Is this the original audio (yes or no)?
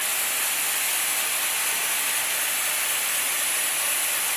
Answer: yes